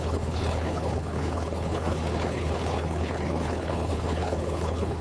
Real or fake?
fake